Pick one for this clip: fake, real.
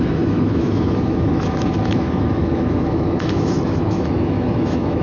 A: fake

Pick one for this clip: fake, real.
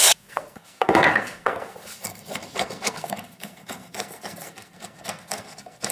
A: fake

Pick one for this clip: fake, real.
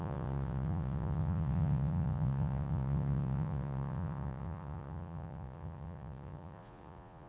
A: fake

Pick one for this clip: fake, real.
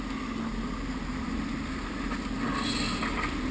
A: real